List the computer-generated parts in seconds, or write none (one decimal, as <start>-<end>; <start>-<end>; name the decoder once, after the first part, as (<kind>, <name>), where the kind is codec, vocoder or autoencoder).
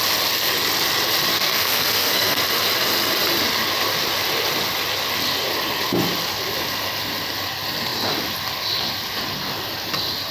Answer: 1.3-2.4 (codec, SNAC)